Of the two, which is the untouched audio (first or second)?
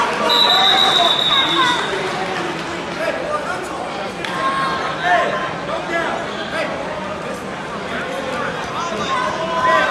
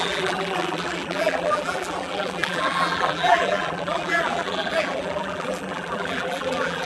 first